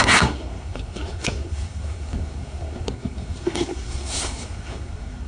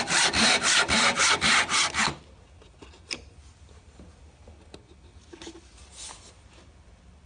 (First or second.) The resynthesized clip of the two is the first